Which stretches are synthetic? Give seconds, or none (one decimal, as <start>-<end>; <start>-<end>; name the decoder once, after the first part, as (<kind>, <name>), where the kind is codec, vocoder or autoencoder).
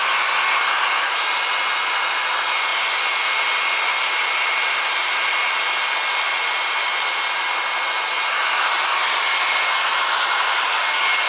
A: none